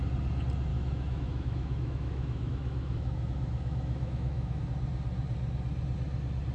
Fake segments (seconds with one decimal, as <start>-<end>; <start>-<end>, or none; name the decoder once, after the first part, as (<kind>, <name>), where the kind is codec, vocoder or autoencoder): 0.7-4.6 (autoencoder, DAC-VAE)